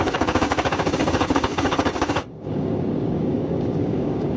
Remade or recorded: remade